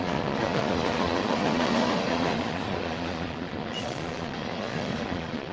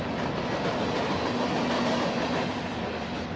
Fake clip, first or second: first